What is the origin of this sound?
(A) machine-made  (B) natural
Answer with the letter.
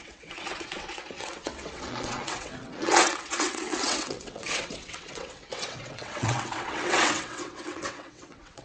A